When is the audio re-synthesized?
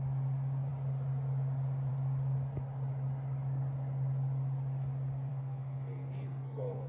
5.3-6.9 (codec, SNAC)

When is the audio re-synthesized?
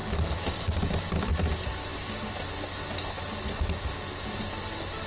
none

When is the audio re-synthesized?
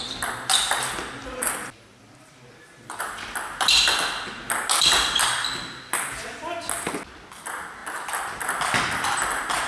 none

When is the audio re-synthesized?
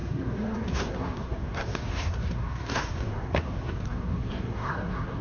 0.0-5.2 (codec, SNAC)